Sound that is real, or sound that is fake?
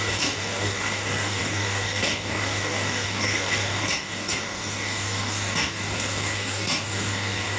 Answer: fake